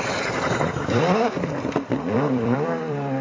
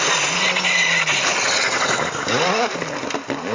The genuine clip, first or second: second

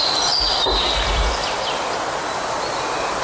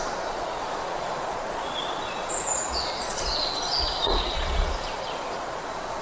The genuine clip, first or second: first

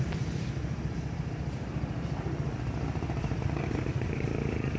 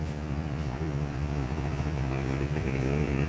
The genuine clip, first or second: first